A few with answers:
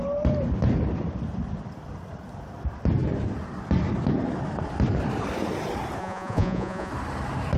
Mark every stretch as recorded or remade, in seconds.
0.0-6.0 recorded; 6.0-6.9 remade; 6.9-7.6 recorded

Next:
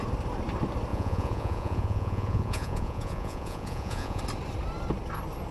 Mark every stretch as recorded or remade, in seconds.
0.0-0.9 recorded; 0.9-4.2 remade; 4.2-5.5 recorded

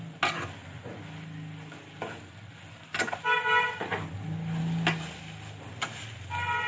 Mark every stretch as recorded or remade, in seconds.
0.0-6.7 recorded

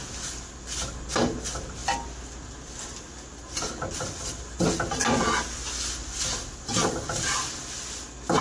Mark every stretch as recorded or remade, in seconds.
0.0-8.4 recorded